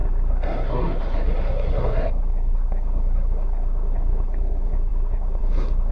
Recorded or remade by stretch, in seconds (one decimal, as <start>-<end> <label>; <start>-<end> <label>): 0.0-5.9 remade